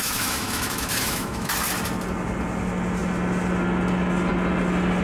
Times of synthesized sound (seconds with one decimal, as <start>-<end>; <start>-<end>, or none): 0.0-1.5